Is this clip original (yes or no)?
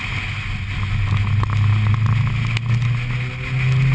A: yes